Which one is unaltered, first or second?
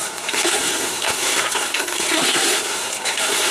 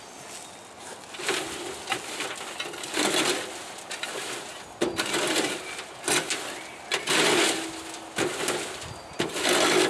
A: second